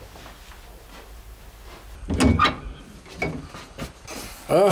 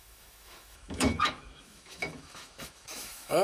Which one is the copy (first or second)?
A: second